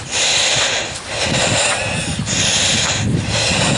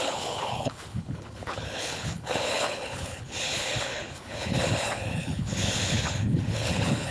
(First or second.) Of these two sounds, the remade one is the second